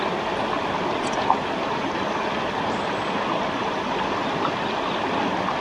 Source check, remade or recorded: recorded